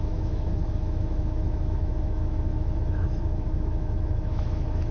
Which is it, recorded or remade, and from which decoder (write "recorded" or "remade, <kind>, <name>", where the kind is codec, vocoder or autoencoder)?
remade, autoencoder, DAC-VAE